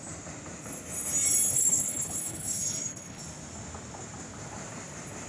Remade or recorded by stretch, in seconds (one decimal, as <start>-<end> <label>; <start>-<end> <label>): 0.0-1.5 recorded; 1.5-3.2 remade; 3.2-5.3 recorded